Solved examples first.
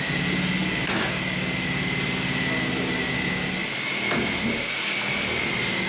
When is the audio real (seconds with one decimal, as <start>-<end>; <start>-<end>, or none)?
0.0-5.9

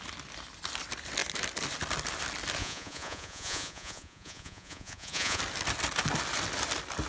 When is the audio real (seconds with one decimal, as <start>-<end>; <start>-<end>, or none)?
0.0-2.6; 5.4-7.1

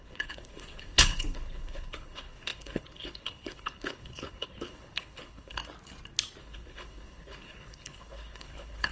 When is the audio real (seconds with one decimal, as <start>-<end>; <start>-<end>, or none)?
5.6-6.4

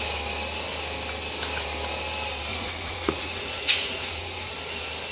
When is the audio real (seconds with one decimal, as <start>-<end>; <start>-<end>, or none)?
0.0-2.5; 4.5-5.1